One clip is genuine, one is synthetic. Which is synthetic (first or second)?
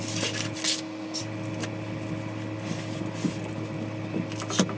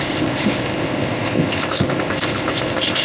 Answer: second